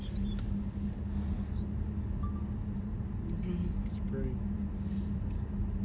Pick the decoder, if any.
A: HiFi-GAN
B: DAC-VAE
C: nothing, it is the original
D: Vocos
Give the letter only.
C